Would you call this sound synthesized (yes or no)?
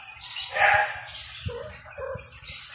no